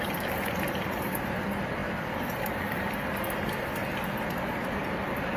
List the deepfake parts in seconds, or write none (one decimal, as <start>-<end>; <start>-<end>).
none